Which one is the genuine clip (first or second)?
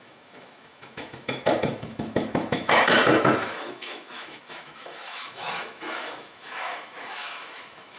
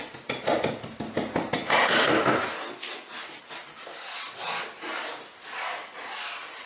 second